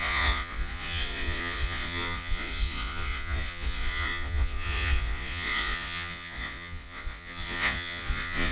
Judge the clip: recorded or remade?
remade